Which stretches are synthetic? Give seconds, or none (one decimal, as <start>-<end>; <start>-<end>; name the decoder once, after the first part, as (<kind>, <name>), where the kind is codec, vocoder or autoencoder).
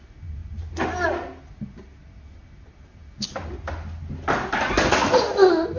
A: none